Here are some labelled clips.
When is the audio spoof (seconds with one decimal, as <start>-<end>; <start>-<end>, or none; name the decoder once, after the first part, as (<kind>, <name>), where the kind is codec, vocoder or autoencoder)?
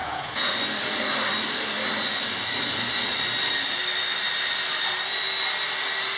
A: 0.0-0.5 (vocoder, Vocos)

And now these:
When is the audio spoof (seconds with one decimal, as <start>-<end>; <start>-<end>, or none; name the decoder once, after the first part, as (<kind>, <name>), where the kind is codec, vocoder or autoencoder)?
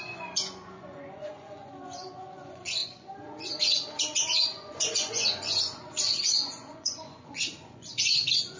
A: 0.0-8.6 (vocoder, Vocos)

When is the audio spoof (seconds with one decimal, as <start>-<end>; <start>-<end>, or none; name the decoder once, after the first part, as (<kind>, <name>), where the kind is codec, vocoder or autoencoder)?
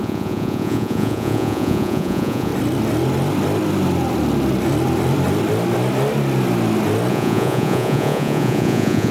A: 0.0-2.5 (vocoder, Vocos); 7.1-9.1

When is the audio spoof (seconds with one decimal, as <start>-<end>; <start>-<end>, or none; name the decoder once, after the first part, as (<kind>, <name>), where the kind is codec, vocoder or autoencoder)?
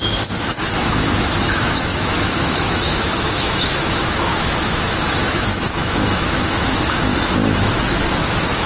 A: 0.0-7.1 (autoencoder, DAC-VAE); 8.1-8.7